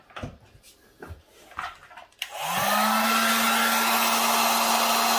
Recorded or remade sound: recorded